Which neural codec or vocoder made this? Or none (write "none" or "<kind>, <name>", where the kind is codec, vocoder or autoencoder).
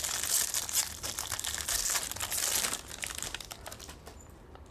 none